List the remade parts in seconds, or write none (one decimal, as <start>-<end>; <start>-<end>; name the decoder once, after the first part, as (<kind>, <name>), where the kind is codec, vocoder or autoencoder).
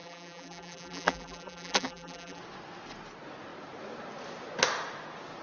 0.0-2.4 (vocoder, BigVGAN v2)